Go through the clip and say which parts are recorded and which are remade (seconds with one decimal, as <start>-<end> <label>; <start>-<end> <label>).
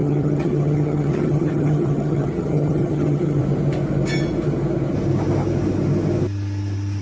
0.0-3.4 remade; 3.4-7.0 recorded